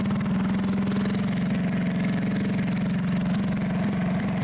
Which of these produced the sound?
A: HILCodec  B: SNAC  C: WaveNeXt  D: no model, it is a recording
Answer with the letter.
D